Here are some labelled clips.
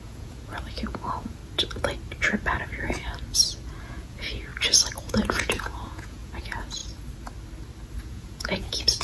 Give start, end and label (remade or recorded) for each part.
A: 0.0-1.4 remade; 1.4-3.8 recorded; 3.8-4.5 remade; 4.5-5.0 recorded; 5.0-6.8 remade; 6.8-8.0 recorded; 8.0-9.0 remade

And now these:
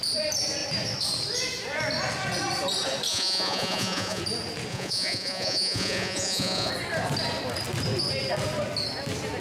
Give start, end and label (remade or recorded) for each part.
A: 0.0-3.1 recorded; 3.1-4.2 remade; 4.2-4.7 recorded; 4.7-6.7 remade; 6.7-9.4 recorded

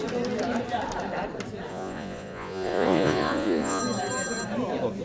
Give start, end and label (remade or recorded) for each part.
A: 0.0-1.7 recorded; 1.7-3.8 remade; 3.8-5.0 recorded

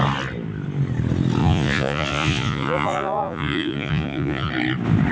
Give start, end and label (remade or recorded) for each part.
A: 0.0-1.4 recorded; 1.4-4.5 remade; 4.5-5.1 recorded

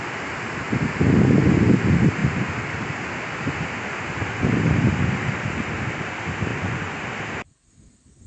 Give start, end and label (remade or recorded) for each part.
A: 0.0-6.5 recorded; 6.5-7.0 remade; 7.0-8.3 recorded

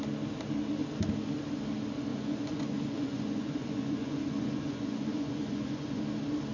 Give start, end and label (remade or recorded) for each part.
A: 0.0-2.1 recorded; 2.1-6.0 remade; 6.0-6.5 recorded